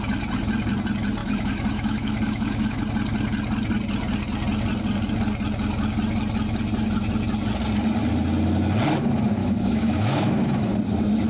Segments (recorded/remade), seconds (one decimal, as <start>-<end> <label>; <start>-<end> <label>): 0.0-1.2 recorded; 1.2-2.8 remade; 2.8-9.4 recorded; 9.4-10.7 remade; 10.7-11.3 recorded